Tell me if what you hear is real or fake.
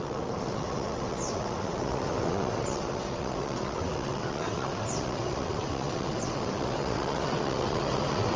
fake